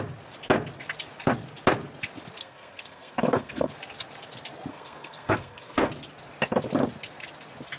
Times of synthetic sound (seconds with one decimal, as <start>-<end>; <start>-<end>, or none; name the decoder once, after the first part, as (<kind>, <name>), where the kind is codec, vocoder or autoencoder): 2.4-3.7 (codec, SNAC); 4.7-5.9